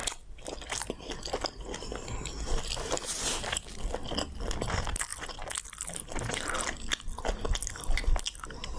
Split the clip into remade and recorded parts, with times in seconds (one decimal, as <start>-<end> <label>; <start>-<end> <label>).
0.0-8.8 recorded